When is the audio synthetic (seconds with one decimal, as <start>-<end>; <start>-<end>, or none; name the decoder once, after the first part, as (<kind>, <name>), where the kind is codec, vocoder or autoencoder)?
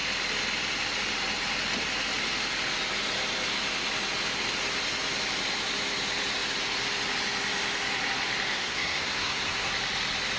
8.5-9.7 (codec, SNAC)